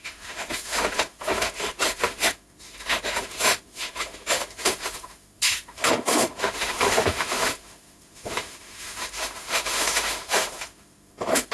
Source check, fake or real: fake